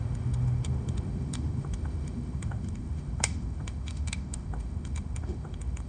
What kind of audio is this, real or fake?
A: fake